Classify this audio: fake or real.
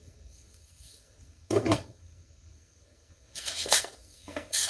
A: fake